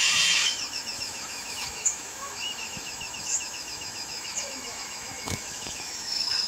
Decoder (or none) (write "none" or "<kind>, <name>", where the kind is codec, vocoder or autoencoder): autoencoder, DAC-VAE